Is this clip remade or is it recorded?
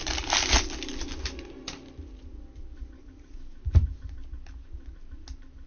recorded